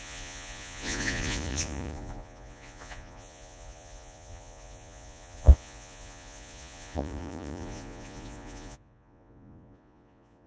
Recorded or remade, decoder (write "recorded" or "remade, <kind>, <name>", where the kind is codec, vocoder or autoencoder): remade, vocoder, Vocos